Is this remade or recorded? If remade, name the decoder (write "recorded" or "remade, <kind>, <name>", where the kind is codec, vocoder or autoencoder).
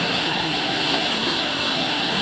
remade, codec, SNAC